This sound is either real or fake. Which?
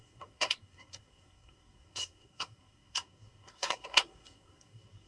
fake